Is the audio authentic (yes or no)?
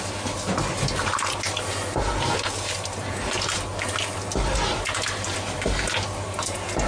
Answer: yes